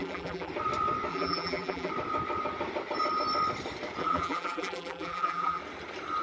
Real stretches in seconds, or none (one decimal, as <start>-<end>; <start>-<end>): 0.5-1.1; 1.9-4.0; 5.6-6.2

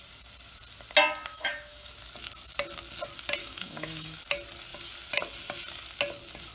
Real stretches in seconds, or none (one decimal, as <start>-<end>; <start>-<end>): 0.0-1.3; 1.9-3.4; 4.2-6.5

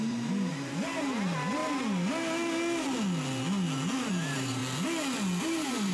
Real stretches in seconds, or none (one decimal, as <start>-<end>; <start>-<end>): 1.6-4.1; 4.6-5.4

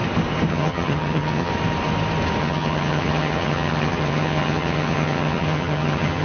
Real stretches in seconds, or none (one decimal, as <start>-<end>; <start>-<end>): 0.0-0.5; 1.5-2.4

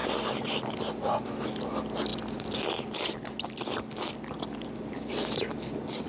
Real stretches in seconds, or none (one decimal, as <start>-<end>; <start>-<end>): 0.0-6.1

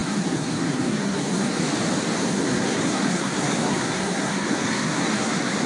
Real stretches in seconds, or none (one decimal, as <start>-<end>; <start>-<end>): 1.6-2.2